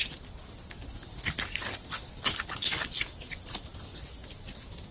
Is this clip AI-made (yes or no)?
no